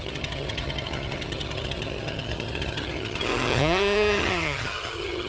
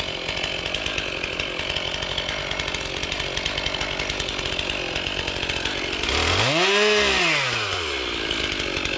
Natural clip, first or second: second